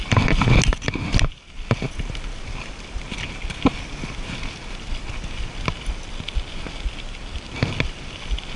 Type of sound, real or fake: real